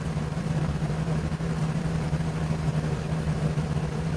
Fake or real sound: fake